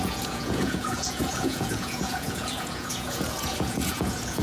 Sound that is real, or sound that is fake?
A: fake